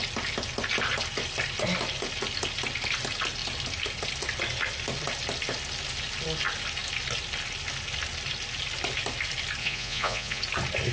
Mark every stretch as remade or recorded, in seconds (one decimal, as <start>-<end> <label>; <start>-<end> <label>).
0.0-9.6 recorded; 9.6-10.4 remade; 10.4-10.9 recorded